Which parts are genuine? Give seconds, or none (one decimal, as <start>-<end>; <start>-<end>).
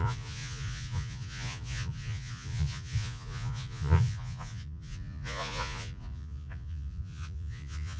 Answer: none